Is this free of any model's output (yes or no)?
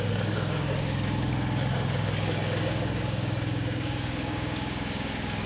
no